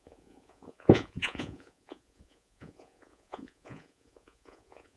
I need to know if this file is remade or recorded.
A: remade